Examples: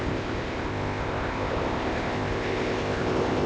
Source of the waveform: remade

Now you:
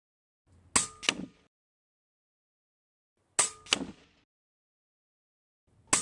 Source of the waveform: recorded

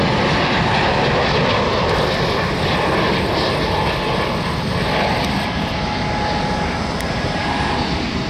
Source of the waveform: recorded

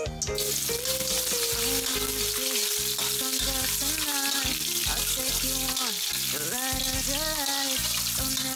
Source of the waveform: recorded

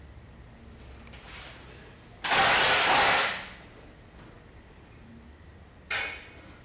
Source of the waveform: recorded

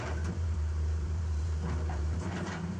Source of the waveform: remade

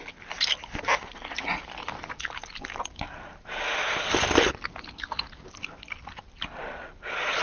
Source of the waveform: recorded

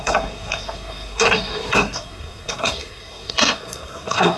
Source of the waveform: remade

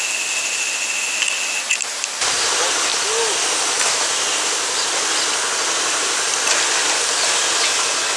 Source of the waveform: recorded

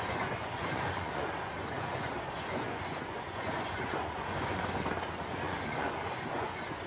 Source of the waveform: remade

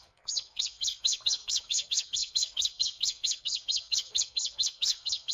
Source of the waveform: remade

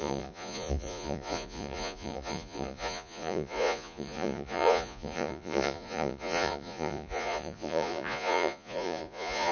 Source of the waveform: remade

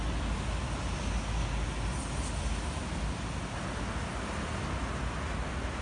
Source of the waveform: recorded